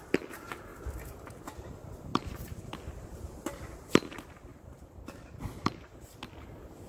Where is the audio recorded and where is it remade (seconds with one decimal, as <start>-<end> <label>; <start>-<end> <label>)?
0.0-2.1 recorded; 2.1-2.9 remade; 2.9-4.5 recorded; 4.5-5.7 remade; 5.7-6.9 recorded